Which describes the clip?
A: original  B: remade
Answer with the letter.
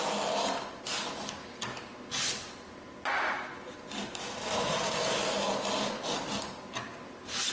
A